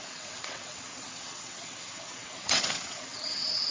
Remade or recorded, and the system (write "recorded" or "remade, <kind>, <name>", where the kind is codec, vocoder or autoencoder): remade, vocoder, WaveNeXt